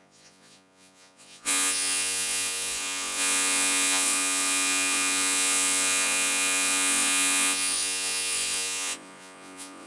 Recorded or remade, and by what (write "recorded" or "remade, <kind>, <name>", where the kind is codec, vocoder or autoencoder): remade, vocoder, Vocos